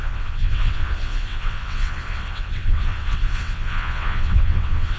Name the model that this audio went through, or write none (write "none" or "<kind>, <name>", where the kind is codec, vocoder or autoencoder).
vocoder, WaveNeXt